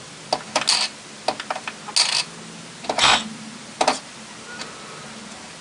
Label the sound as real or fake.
real